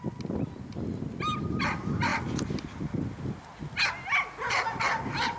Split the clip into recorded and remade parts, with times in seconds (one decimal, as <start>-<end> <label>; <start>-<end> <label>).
0.0-5.4 recorded

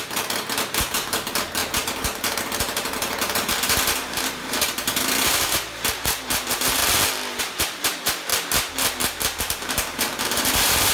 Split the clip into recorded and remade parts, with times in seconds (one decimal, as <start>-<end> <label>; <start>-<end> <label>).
0.0-6.8 remade; 6.8-7.4 recorded; 7.4-8.3 remade; 8.3-9.4 recorded; 9.4-10.9 remade

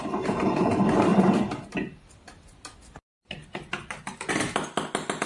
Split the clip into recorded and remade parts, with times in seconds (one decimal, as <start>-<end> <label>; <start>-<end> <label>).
0.0-0.7 remade; 0.7-5.3 recorded

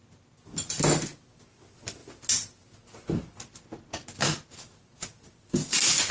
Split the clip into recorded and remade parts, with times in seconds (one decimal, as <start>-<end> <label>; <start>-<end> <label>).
0.0-6.1 recorded